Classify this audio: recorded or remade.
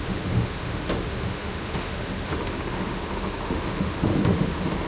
remade